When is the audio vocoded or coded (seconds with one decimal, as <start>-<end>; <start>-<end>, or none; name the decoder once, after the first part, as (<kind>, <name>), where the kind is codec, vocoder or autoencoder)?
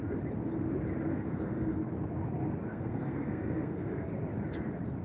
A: 1.1-1.8 (codec, SNAC); 2.7-4.1